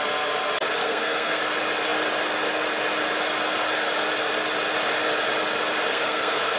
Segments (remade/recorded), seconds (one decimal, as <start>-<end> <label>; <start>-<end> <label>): 0.0-0.8 recorded; 0.8-1.4 remade; 1.4-5.9 recorded; 5.9-6.6 remade